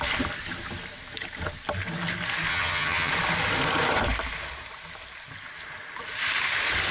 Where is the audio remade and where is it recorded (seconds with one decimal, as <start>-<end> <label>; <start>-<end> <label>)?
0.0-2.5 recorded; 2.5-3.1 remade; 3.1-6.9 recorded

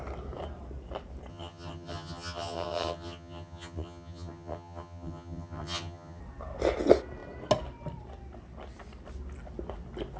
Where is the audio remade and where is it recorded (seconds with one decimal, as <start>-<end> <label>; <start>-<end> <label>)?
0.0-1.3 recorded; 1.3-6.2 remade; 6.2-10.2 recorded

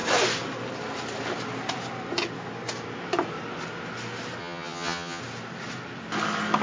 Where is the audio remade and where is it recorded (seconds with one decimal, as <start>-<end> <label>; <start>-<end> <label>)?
0.0-4.4 recorded; 4.4-5.2 remade; 5.2-6.6 recorded

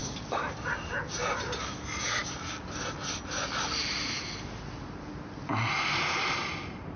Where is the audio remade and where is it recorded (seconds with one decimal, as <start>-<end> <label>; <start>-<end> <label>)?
0.0-7.0 recorded